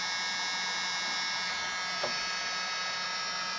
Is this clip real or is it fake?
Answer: real